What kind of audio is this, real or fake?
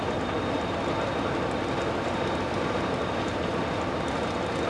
real